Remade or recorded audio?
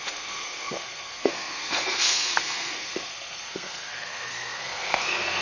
remade